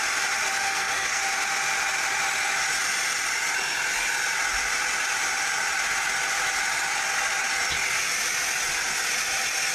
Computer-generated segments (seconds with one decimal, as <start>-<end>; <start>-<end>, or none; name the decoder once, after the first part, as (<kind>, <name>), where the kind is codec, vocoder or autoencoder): 0.6-1.2 (codec, SNAC)